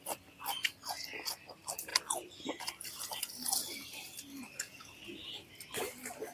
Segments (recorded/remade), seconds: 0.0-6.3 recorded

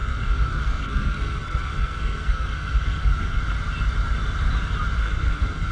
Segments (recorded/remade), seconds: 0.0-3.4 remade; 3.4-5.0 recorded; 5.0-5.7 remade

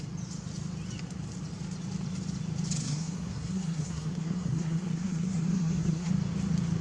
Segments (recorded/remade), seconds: 0.0-2.8 recorded; 2.8-6.1 remade; 6.1-6.8 recorded